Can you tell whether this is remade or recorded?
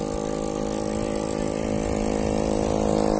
recorded